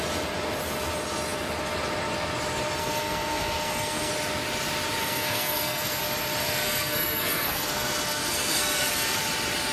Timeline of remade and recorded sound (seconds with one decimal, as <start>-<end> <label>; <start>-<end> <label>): 0.0-2.8 recorded; 2.8-4.1 remade; 4.1-5.0 recorded; 5.0-6.0 remade; 6.0-6.4 recorded; 6.4-9.2 remade; 9.2-9.7 recorded